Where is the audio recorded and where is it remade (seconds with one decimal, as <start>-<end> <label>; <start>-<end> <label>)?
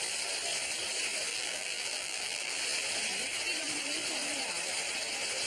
0.0-1.3 recorded; 1.3-2.6 remade; 2.6-5.5 recorded